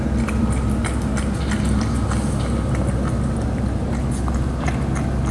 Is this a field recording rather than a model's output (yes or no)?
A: yes